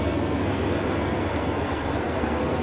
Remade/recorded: remade